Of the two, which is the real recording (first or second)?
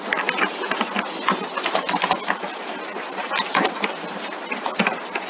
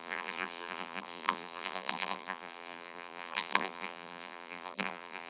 first